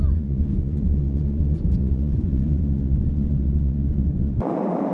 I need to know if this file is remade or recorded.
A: remade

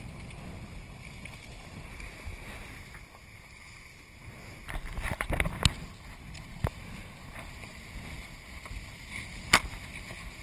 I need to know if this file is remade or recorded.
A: recorded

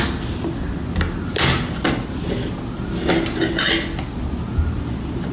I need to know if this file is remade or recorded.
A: recorded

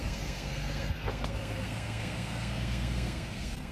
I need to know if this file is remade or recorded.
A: remade